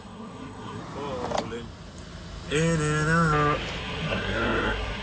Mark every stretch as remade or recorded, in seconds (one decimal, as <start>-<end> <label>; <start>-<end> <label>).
0.0-0.8 remade; 0.8-3.8 recorded; 3.8-5.0 remade